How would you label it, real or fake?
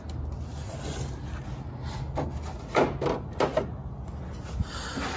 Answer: real